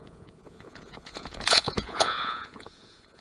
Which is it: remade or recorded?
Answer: remade